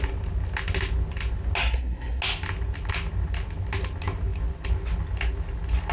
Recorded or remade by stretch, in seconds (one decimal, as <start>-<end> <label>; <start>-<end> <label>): 0.0-1.6 recorded; 1.6-2.2 remade; 2.2-5.9 recorded